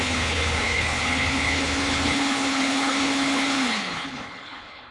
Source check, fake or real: fake